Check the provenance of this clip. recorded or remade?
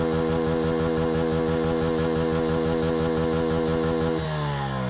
recorded